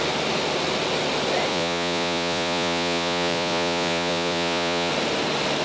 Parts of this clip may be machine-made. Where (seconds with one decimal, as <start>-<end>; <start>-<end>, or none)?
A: 1.5-4.9